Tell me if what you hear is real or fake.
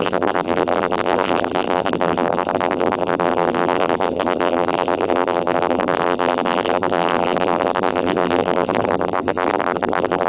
fake